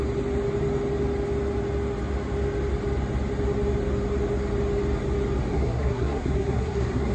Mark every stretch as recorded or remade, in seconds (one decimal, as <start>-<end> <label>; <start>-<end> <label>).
0.0-5.5 recorded; 5.5-7.1 remade